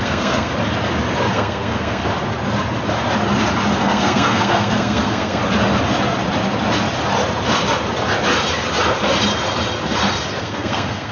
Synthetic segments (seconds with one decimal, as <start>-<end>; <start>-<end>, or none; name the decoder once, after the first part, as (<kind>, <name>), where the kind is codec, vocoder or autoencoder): 0.0-0.5 (codec, SNAC); 1.3-2.0; 3.8-5.4; 10.4-11.1